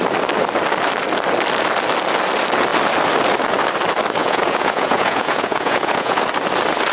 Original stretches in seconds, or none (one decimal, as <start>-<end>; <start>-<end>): 0.0-4.2; 6.2-6.9